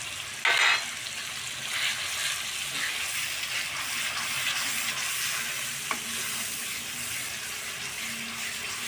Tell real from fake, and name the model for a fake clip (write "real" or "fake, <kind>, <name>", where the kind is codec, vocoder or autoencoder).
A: real